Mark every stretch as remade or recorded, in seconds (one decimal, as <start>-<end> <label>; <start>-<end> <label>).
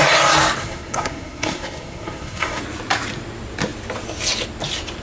0.0-0.6 recorded; 0.6-2.6 remade; 2.6-5.0 recorded